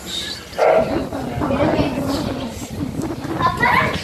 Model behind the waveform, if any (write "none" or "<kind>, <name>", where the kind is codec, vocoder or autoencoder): none